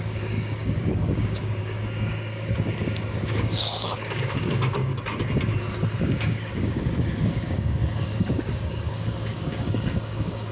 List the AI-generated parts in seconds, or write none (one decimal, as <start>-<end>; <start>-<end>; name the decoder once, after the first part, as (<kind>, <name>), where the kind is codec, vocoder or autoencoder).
0.0-4.9 (codec, DAC); 6.0-10.5